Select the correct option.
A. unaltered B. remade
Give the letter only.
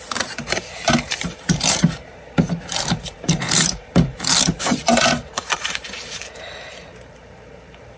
B